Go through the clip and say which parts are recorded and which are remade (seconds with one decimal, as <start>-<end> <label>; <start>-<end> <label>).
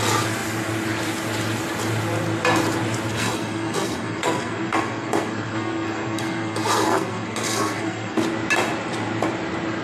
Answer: 0.0-3.1 recorded; 3.1-8.2 remade; 8.2-9.8 recorded